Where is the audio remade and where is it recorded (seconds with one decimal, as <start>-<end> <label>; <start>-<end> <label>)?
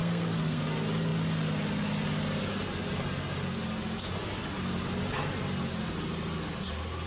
0.0-0.6 remade; 0.6-7.1 recorded